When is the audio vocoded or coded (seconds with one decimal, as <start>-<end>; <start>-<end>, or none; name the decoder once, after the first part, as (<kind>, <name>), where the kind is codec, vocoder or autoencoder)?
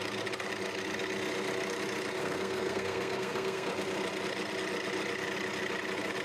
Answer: 2.2-3.7 (codec, SNAC)